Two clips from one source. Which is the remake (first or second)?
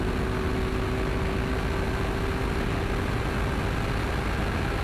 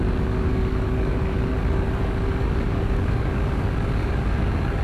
second